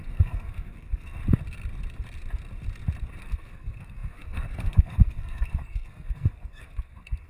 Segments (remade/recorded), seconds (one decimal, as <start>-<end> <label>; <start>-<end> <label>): 0.0-1.2 remade; 1.2-3.2 recorded; 3.2-7.3 remade